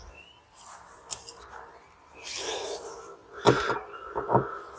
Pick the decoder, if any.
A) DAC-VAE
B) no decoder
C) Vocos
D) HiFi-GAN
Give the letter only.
B